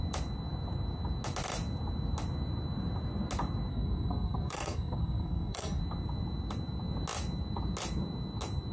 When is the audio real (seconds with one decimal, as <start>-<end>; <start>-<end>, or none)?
0.0-3.7; 5.8-8.7